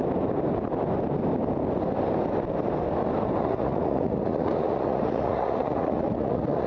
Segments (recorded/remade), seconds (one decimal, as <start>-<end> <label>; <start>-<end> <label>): 0.0-3.4 recorded; 3.4-6.7 remade